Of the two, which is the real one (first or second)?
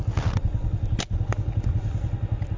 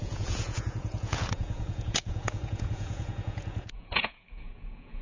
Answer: first